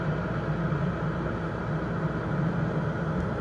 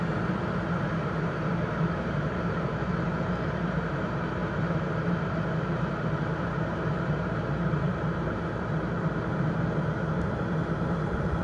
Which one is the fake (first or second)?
second